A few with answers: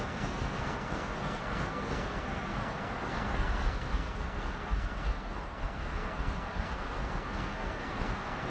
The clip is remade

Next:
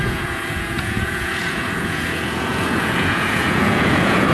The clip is remade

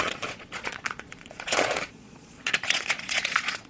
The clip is remade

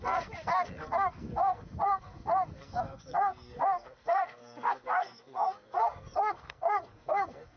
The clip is remade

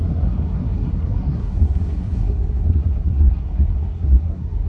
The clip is remade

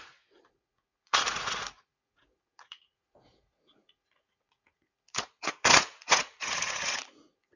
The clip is remade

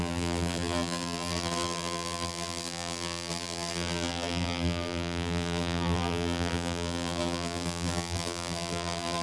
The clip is remade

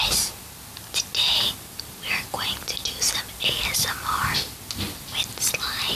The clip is recorded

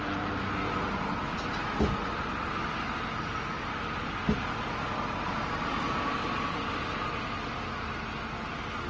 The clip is recorded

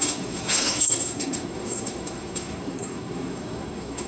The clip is remade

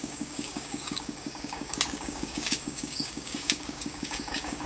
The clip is remade